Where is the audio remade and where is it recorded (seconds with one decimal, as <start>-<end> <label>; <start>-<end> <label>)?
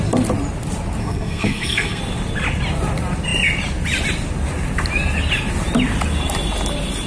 0.0-1.0 recorded; 1.0-2.0 remade; 2.0-7.1 recorded